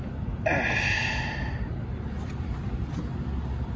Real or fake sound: real